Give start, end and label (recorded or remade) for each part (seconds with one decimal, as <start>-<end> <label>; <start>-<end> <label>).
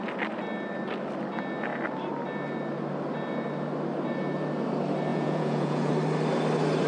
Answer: 0.0-5.1 recorded; 5.1-5.9 remade; 5.9-6.9 recorded